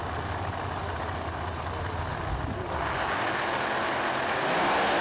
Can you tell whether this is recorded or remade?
recorded